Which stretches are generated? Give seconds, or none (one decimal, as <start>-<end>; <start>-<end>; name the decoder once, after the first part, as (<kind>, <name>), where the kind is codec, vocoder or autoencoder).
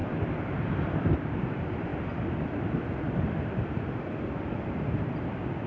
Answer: none